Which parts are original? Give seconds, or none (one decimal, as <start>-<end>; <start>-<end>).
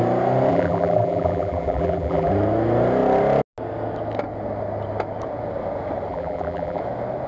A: 0.0-0.5; 2.3-6.1; 6.8-7.3